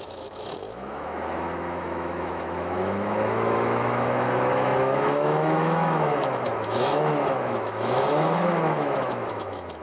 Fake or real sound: fake